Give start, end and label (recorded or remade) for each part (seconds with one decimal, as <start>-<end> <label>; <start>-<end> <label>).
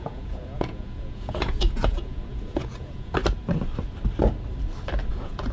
0.0-3.2 remade; 3.2-5.1 recorded; 5.1-5.5 remade